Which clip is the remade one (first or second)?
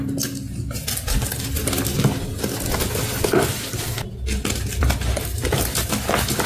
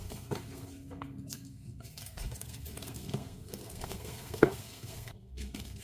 second